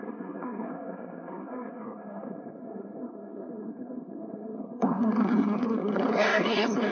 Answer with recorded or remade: remade